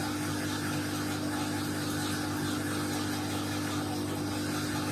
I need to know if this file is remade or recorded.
recorded